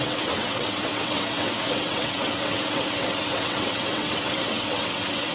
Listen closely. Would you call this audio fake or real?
fake